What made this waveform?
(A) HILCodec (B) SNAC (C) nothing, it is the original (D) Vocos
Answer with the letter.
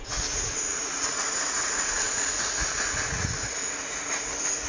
D